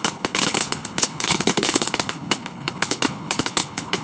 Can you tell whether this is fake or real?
fake